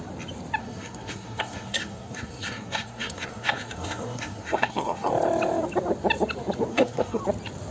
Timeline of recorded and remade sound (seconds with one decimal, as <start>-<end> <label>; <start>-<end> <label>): 0.0-0.6 recorded; 0.6-5.1 remade; 5.1-6.7 recorded; 6.7-7.2 remade; 7.2-7.7 recorded